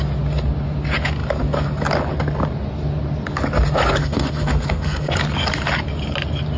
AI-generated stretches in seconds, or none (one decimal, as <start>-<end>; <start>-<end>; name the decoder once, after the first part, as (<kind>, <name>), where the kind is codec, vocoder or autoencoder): 4.0-5.1 (codec, SNAC)